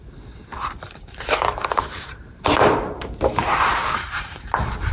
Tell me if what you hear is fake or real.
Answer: fake